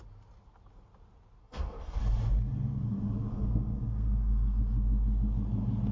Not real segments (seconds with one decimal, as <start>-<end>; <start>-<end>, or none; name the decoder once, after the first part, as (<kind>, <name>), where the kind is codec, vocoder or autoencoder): 1.4-2.0 (codec, SNAC); 3.3-4.6